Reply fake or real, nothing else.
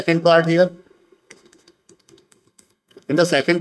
fake